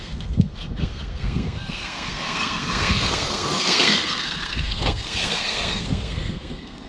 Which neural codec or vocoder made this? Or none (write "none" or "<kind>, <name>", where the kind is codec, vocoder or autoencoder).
codec, SNAC